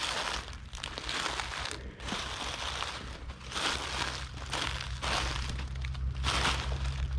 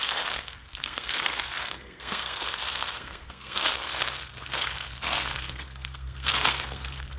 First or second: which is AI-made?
second